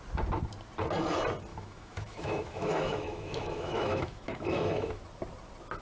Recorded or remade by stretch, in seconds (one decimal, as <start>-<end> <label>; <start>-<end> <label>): 0.0-1.5 recorded; 1.5-5.0 remade; 5.0-5.8 recorded